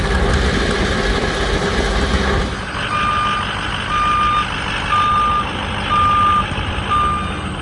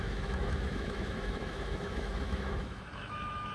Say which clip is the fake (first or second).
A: second